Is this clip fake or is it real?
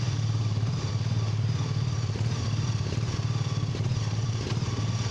fake